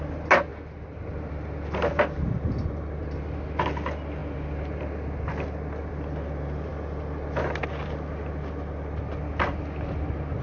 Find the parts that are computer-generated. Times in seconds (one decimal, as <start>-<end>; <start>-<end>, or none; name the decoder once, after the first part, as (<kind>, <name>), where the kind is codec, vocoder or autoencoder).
none